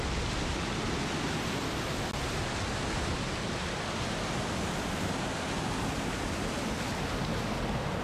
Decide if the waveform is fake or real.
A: real